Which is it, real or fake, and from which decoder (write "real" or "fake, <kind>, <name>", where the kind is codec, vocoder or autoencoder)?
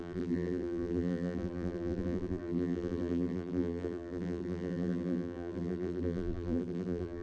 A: fake, vocoder, BigVGAN v2